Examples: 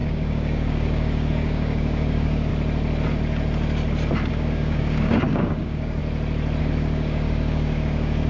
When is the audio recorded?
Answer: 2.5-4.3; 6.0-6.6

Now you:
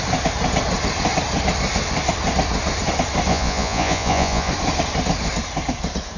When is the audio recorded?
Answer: 0.0-3.3; 4.5-6.2

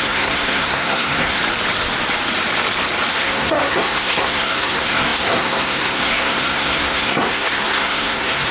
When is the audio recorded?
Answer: 1.4-3.1

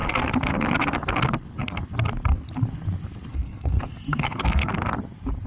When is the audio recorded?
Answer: 0.0-3.3; 4.7-5.5

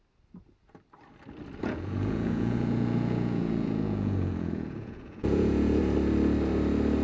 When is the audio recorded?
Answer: 0.0-1.6; 5.8-7.0